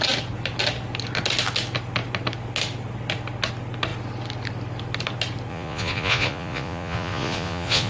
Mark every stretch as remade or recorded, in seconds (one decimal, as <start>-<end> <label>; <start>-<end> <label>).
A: 0.0-5.5 recorded; 5.5-7.9 remade